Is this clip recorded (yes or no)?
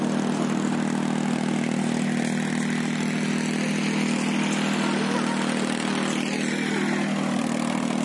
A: yes